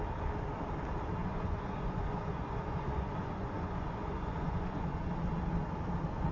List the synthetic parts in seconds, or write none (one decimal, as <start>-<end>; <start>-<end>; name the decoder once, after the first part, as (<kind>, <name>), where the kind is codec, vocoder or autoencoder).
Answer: 1.2-5.0 (vocoder, Vocos)